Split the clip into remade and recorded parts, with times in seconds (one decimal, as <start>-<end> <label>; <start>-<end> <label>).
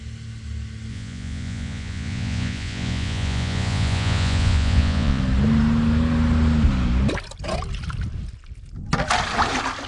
0.0-0.9 recorded; 0.9-5.2 remade; 5.2-9.9 recorded